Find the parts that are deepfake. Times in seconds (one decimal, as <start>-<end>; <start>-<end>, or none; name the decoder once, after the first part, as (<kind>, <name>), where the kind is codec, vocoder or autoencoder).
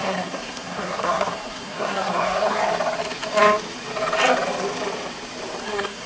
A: 0.0-2.6 (codec, SNAC); 5.6-6.1